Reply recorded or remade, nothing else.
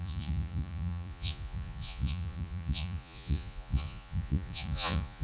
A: remade